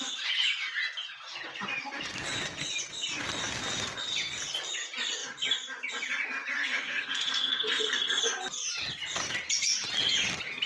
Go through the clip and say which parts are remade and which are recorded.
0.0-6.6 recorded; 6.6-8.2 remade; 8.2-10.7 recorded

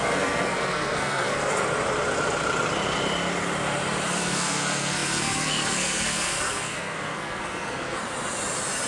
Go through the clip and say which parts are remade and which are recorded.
0.0-1.5 remade; 1.5-4.1 recorded; 4.1-8.0 remade; 8.0-8.9 recorded

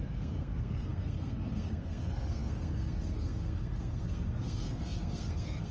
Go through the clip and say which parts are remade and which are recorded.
0.0-5.7 remade

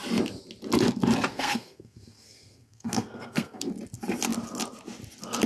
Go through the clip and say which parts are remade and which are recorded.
0.0-1.3 recorded; 1.3-3.7 remade; 3.7-5.5 recorded

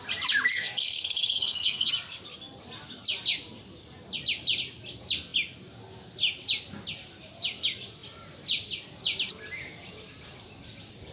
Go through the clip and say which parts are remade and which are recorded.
0.0-0.5 recorded; 0.5-1.9 remade; 1.9-11.1 recorded

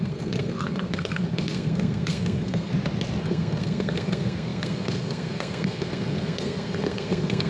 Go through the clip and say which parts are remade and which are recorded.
0.0-2.7 remade; 2.7-3.2 recorded; 3.2-7.5 remade

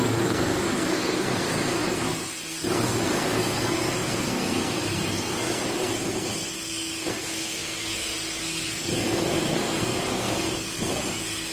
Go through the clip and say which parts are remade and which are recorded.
0.0-11.5 remade

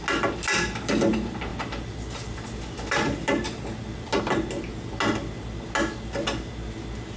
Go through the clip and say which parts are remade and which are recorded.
0.0-7.2 recorded